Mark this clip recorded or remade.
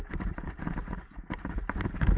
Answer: remade